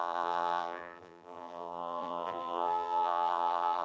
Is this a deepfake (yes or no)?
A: yes